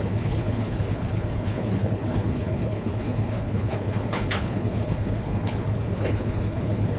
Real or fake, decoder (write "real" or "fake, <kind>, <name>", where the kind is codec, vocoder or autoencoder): fake, codec, HILCodec